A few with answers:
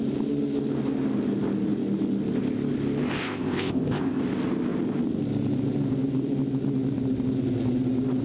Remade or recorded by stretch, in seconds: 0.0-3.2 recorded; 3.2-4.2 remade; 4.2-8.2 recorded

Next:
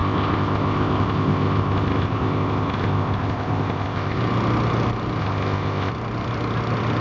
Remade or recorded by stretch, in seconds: 0.0-4.2 remade; 4.2-5.2 recorded; 5.2-5.9 remade; 5.9-7.0 recorded

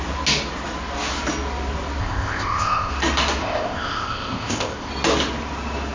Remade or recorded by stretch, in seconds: 0.0-2.0 recorded; 2.0-2.9 remade; 2.9-3.4 recorded; 3.4-4.9 remade; 4.9-5.9 recorded

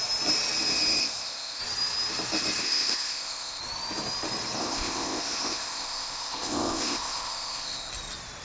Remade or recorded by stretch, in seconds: 0.0-1.0 recorded; 1.0-1.6 remade; 1.6-2.6 recorded; 2.6-3.6 remade; 3.6-4.6 recorded; 4.6-7.9 remade; 7.9-8.4 recorded

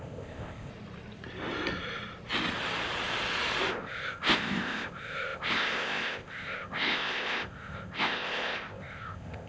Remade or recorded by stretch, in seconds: 0.0-0.7 remade; 0.7-3.7 recorded; 3.7-9.5 remade

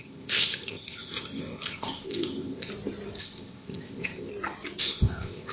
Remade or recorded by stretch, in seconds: 0.0-2.7 remade; 2.7-3.2 recorded; 3.2-4.3 remade; 4.3-4.8 recorded; 4.8-5.5 remade

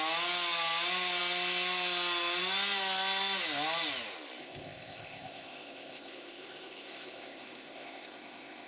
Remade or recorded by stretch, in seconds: 0.0-4.4 recorded; 4.4-8.7 remade

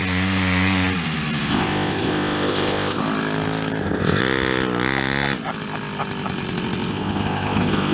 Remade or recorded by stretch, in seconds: 0.0-1.5 recorded; 1.5-3.0 remade; 3.0-3.8 recorded; 3.8-4.2 remade; 4.2-6.9 recorded; 6.9-7.9 remade